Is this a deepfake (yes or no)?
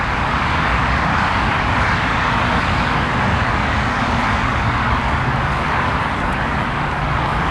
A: yes